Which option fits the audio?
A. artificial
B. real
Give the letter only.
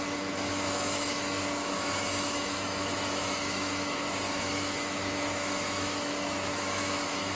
A